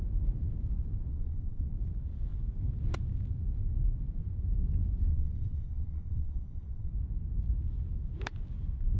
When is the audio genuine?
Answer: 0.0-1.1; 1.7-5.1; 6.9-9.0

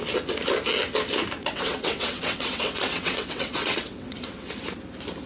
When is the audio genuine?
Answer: 0.0-1.4; 4.5-5.3

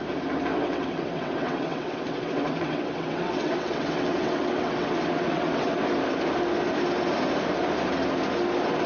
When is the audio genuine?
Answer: 0.0-0.5; 5.8-8.9

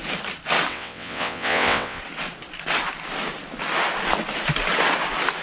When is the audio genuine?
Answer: 0.0-0.7; 2.0-5.4

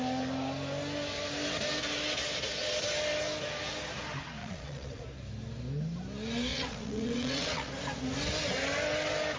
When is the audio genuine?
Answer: 0.0-4.4; 5.0-6.5; 7.7-9.4

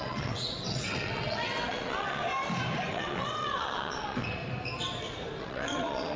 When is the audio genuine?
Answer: 2.2-2.9; 4.4-5.4

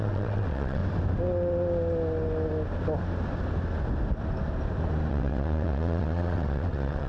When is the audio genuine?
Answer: 0.8-5.1